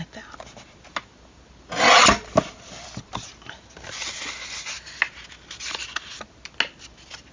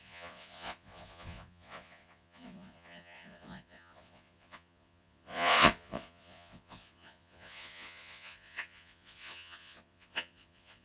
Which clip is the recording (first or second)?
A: first